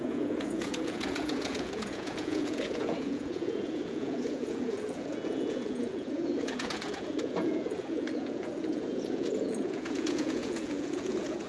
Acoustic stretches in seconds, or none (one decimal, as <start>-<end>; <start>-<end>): none